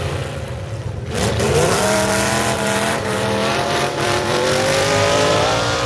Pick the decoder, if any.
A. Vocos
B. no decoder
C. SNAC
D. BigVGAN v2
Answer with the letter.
D